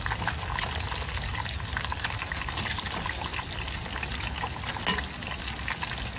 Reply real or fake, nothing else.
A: real